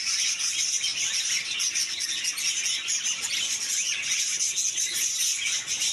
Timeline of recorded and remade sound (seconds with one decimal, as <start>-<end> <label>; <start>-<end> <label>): 0.0-5.9 recorded